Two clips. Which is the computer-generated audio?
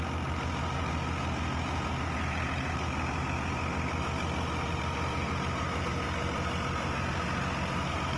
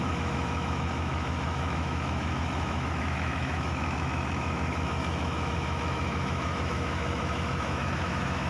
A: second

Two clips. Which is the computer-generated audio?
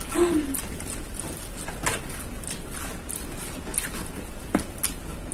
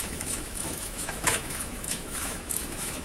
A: second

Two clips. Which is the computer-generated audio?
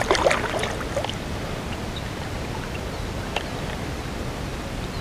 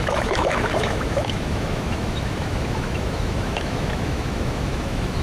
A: second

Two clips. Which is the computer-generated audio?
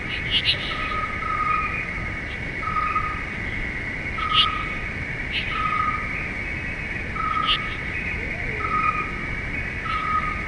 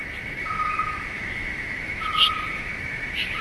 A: second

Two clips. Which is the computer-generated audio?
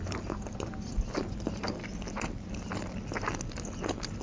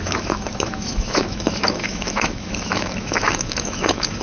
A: second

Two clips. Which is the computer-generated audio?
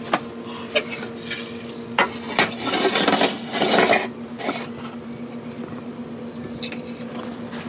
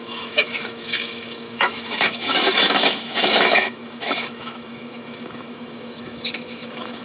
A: second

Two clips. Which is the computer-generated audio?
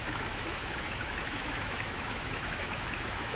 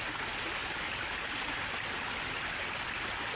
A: first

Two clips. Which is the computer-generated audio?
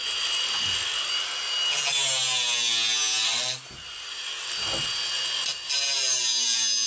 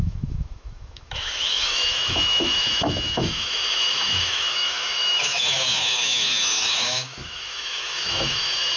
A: second